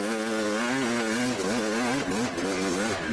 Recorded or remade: recorded